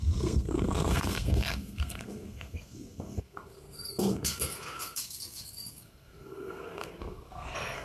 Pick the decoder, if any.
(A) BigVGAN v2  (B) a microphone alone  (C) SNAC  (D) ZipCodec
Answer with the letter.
C